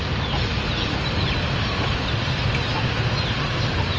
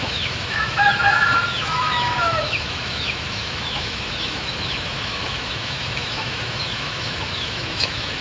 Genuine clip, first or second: first